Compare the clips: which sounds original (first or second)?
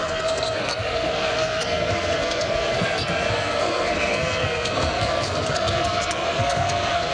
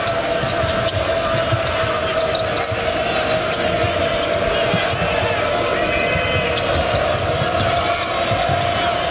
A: second